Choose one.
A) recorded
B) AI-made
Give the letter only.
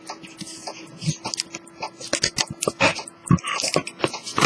A